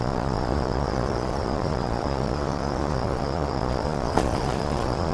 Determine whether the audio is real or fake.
fake